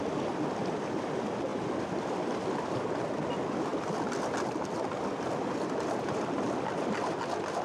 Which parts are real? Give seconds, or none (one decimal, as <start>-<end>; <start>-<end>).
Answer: 0.0-7.6